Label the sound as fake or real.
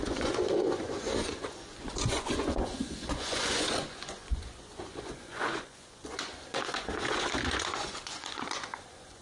fake